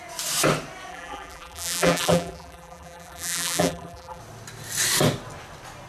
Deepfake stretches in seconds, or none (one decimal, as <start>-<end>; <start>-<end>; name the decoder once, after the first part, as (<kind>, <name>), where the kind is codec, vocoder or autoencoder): 0.9-4.2 (vocoder, BigVGAN v2)